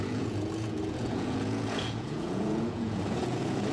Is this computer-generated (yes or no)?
yes